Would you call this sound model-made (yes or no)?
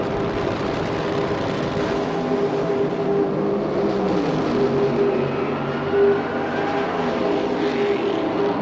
no